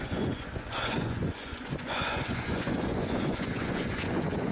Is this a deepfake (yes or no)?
yes